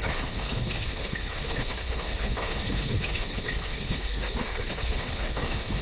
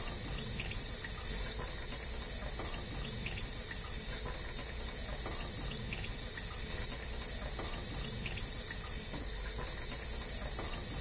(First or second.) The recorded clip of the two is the second